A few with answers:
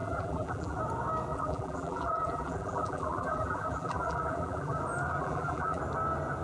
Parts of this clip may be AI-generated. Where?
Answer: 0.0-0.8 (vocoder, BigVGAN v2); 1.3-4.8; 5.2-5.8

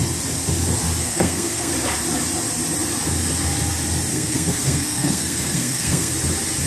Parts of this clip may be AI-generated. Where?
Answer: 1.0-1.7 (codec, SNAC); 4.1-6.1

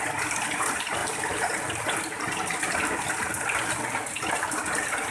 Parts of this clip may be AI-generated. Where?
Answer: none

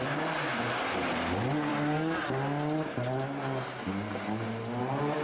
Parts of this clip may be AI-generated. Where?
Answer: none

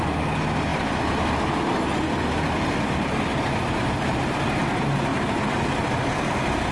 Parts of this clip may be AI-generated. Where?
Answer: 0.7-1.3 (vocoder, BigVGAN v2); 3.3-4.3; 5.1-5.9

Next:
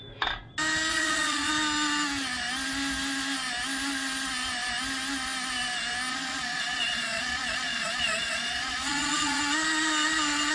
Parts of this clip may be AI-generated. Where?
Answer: 0.9-1.5 (vocoder, Vocos); 6.1-9.4

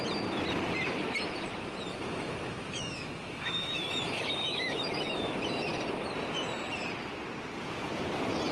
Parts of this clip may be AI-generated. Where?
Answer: 1.9-5.2 (autoencoder, DAC-VAE)